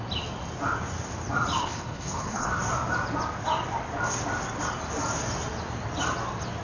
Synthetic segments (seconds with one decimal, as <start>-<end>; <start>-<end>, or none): 1.6-2.5